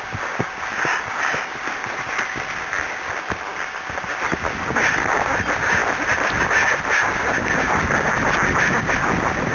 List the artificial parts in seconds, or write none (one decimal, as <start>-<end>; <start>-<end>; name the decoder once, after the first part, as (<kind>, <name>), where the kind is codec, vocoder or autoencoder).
none